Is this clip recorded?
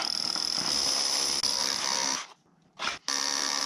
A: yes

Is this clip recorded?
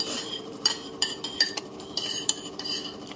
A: no